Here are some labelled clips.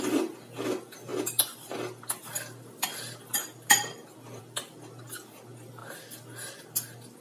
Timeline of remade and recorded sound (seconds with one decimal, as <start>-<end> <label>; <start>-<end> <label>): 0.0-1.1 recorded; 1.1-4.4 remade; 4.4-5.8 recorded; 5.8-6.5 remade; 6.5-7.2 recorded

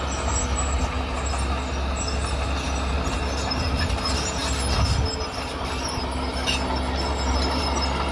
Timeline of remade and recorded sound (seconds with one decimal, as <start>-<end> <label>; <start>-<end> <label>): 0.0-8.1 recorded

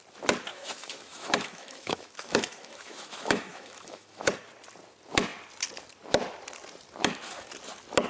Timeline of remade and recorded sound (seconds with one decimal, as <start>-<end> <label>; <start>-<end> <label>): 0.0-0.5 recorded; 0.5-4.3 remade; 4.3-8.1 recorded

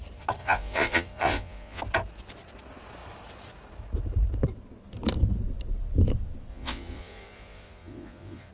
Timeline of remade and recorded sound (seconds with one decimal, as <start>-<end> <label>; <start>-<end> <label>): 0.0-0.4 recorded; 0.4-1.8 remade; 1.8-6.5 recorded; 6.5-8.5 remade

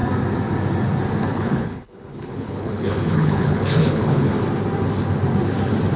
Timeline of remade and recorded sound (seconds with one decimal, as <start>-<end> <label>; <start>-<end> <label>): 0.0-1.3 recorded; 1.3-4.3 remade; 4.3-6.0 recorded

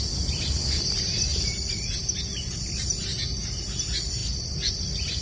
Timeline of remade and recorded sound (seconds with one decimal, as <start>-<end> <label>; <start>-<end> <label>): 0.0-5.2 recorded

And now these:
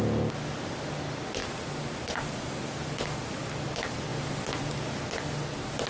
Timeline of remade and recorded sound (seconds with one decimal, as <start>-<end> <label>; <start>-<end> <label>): 0.0-5.9 recorded